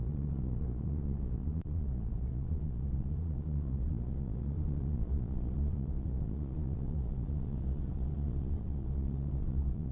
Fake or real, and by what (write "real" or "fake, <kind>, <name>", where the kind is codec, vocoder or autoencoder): fake, vocoder, Vocos